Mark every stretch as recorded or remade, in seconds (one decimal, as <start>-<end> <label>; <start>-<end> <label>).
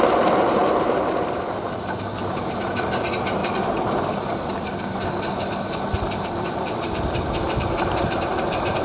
0.0-0.6 recorded; 0.6-2.7 remade; 2.7-3.4 recorded; 3.4-8.4 remade; 8.4-8.8 recorded